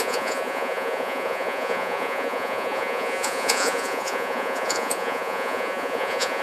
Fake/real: fake